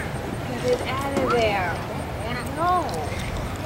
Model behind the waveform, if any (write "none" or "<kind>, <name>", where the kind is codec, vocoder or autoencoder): vocoder, BigVGAN v2